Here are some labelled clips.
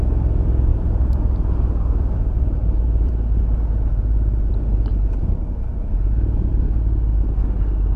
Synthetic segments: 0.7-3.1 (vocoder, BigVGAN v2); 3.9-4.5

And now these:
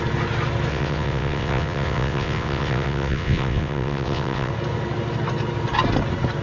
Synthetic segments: 0.7-4.5 (vocoder, WaveNeXt)

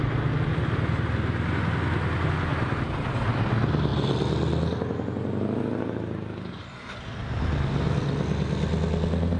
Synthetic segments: none

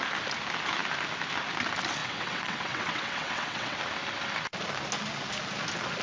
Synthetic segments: 2.0-3.8 (vocoder, WaveNeXt)